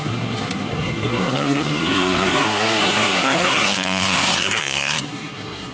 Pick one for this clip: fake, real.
fake